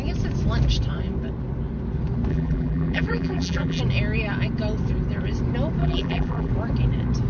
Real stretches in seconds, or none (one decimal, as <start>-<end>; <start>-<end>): 0.0-2.3; 3.8-5.8; 6.5-7.3